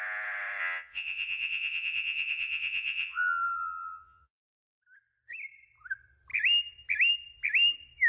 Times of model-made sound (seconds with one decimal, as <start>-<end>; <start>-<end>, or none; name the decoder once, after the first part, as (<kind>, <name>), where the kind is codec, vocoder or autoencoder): 0.6-4.4 (vocoder, Vocos)